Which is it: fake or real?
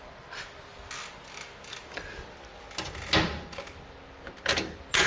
real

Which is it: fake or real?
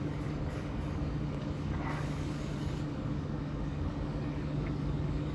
fake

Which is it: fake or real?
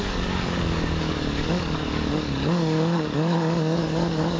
fake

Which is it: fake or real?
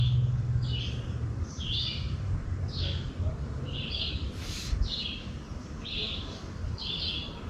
fake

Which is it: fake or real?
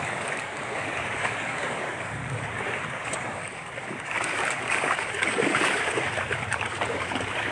fake